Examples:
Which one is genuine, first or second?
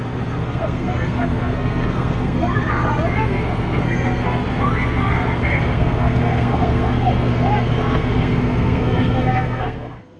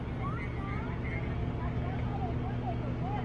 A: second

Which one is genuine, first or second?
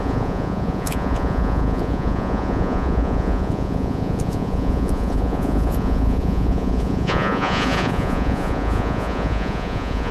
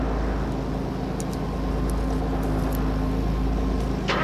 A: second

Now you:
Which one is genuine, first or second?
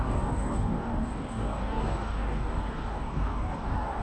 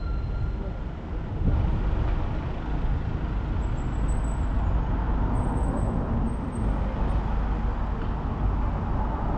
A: second